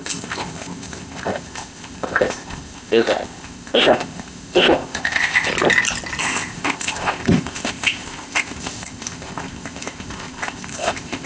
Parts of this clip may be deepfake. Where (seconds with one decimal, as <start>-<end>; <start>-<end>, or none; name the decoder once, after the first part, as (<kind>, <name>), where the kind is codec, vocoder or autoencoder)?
0.0-5.5 (codec, ZipCodec); 6.2-11.3